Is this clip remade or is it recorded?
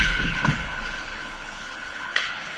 remade